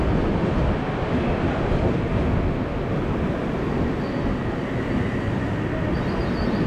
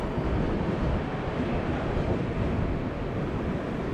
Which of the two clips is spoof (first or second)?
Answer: second